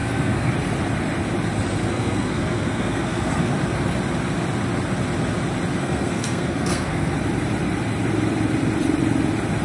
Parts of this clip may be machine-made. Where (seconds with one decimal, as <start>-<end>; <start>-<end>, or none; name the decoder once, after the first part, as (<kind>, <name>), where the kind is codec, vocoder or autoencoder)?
0.0-0.5 (codec, SNAC); 1.8-3.5; 5.8-7.1